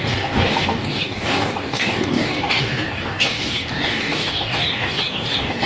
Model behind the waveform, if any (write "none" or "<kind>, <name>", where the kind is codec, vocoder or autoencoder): codec, DAC